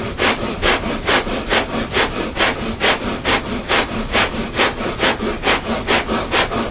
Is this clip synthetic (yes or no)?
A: no